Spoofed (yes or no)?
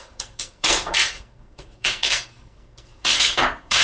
yes